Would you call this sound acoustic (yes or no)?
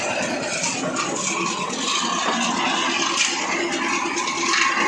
yes